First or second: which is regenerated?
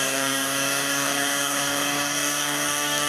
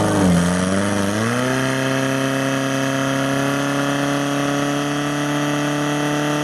first